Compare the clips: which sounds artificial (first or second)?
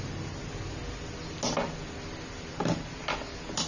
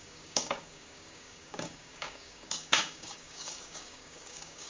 second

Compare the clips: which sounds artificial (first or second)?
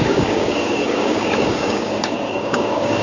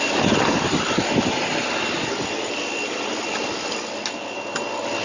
first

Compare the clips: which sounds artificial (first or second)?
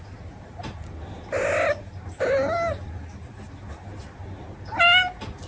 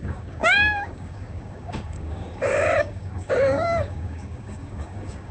second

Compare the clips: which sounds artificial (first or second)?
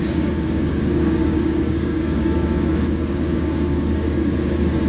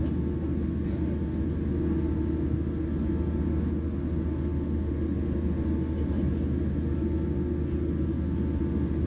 first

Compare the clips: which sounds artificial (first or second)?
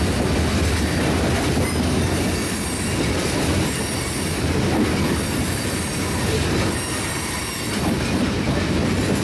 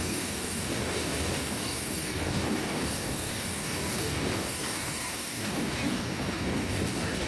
second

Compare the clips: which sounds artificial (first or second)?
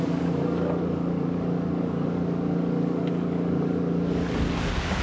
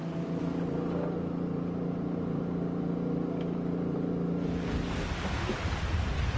first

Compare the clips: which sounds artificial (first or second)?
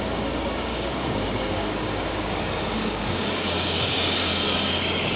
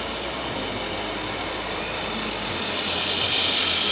first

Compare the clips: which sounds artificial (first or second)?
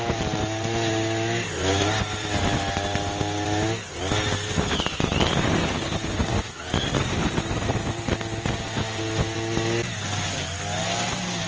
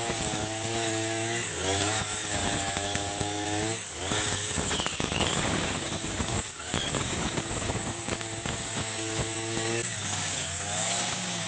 second